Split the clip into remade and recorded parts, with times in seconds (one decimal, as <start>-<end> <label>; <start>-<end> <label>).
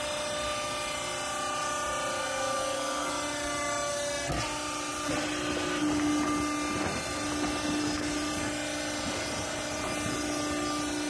0.0-2.2 recorded; 2.2-3.1 remade; 3.1-11.1 recorded